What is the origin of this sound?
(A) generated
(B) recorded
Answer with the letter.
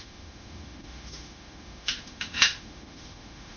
A